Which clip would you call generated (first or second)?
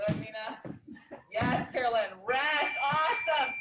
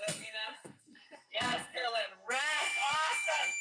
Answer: second